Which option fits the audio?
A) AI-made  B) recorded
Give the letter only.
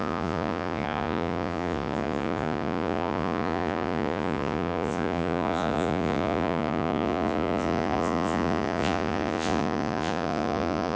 A